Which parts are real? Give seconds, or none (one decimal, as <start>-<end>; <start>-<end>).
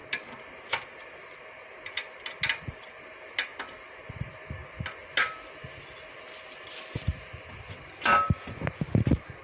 0.0-9.4